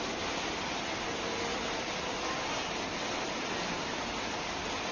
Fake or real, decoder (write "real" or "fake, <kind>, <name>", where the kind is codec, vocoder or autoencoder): real